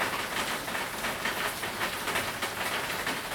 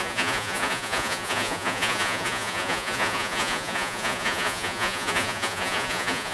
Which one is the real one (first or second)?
first